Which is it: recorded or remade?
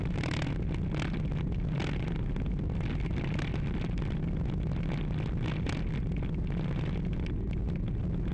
recorded